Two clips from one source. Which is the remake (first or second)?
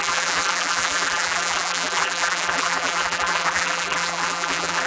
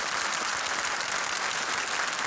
first